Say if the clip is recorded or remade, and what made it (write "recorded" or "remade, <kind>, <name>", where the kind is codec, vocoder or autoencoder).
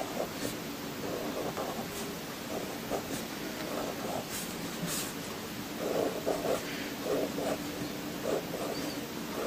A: recorded